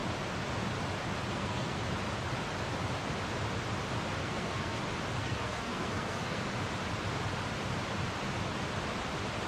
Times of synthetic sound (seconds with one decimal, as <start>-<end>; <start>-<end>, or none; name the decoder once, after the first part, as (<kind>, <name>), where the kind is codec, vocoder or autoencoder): 1.3-1.8 (codec, SNAC); 4.2-4.8; 5.2-6.4